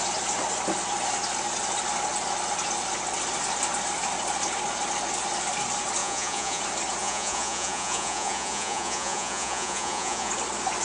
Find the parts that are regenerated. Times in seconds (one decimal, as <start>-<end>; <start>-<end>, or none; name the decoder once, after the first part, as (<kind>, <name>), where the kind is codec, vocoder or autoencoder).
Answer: 6.0-6.6 (vocoder, Vocos); 7.0-10.3

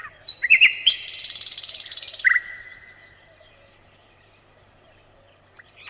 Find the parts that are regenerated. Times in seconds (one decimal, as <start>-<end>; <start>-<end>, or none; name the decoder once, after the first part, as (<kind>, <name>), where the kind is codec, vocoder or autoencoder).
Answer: 0.0-5.9 (vocoder, BigVGAN v2)

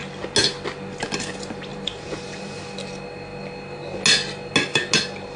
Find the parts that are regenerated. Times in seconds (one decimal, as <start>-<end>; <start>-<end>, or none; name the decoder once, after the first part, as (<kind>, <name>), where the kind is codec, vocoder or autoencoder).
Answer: 1.7-2.6 (vocoder, BigVGAN v2)

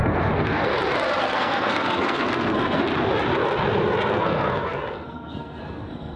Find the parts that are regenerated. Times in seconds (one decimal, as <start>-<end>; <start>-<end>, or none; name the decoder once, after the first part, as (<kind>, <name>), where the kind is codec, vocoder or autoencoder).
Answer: 0.0-0.7 (codec, SNAC); 1.2-2.9; 4.1-6.2

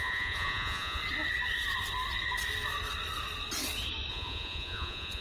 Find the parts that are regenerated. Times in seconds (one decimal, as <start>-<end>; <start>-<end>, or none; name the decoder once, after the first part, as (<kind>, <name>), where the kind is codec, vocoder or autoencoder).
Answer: 0.0-1.0 (vocoder, Vocos); 4.1-5.2

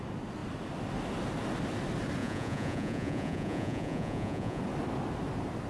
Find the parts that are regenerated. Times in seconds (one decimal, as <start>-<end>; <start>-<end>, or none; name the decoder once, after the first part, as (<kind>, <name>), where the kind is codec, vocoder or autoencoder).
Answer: 2.2-4.6 (vocoder, Vocos)